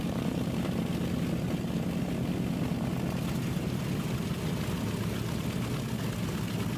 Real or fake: real